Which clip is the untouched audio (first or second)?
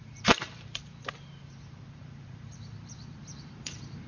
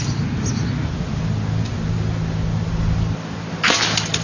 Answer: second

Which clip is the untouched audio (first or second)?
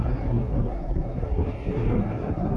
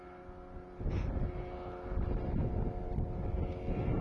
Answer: second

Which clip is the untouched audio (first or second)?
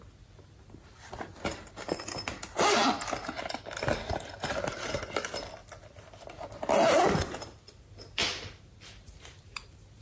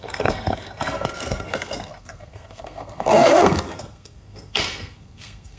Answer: first